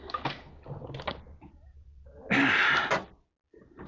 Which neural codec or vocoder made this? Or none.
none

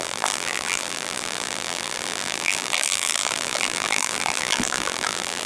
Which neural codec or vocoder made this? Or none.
vocoder, BigVGAN v2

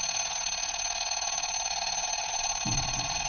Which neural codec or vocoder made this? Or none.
vocoder, WaveNeXt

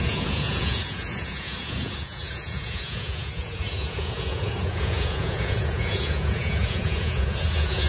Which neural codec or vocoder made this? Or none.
vocoder, Vocos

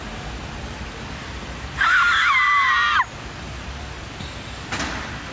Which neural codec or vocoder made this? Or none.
none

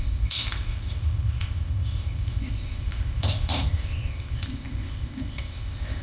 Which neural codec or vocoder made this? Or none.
codec, ZipCodec